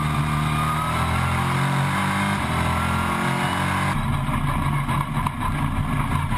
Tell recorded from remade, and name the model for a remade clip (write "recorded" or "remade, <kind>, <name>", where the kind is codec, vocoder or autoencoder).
recorded